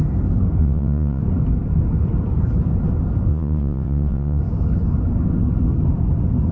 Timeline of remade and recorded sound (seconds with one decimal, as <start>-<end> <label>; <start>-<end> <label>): 0.0-0.6 recorded; 0.6-1.2 remade; 1.2-3.3 recorded; 3.3-4.4 remade; 4.4-6.5 recorded